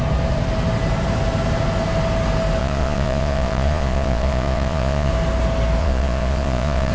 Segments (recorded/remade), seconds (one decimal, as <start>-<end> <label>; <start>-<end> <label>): 0.0-2.6 recorded; 2.6-5.1 remade; 5.1-5.8 recorded; 5.8-6.9 remade